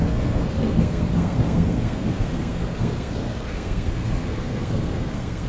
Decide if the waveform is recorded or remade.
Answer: remade